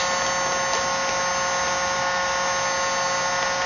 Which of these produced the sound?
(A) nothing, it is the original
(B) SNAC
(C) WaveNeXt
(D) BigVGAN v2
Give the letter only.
A